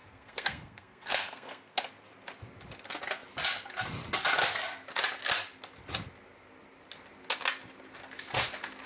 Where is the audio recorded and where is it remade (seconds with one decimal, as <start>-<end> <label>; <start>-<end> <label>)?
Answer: 0.0-1.8 remade; 1.8-8.9 recorded